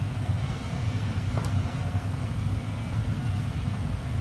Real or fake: fake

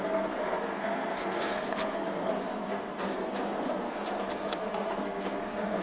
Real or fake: fake